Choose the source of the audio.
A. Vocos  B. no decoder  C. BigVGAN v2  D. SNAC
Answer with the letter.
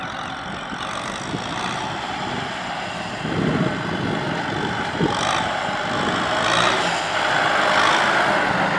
B